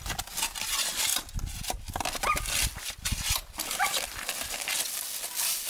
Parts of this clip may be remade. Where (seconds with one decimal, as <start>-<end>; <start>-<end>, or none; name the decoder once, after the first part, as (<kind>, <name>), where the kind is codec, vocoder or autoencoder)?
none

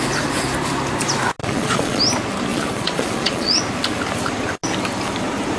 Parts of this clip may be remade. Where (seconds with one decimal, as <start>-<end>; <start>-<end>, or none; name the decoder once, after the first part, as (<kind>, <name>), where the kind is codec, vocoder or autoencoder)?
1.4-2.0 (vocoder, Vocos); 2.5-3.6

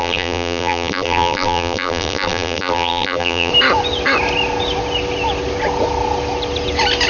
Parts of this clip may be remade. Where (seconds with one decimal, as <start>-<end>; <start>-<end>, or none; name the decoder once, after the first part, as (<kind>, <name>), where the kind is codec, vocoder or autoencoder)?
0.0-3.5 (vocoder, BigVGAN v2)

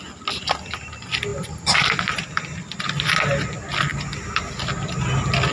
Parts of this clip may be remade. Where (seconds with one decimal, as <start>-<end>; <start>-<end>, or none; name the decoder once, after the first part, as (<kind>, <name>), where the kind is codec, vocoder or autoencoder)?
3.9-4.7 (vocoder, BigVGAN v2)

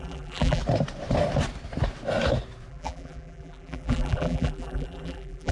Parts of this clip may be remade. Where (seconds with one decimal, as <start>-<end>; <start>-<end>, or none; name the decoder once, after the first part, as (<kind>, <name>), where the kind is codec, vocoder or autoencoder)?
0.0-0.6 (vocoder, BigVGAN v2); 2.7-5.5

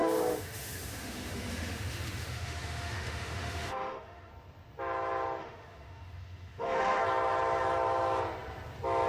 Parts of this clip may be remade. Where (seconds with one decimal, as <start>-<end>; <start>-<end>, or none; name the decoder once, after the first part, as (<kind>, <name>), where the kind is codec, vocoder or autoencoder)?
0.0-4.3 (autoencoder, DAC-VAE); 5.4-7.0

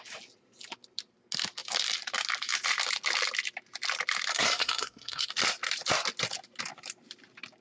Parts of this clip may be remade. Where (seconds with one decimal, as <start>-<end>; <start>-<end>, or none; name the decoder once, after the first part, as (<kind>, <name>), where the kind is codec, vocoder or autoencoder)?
4.3-5.3 (codec, SNAC)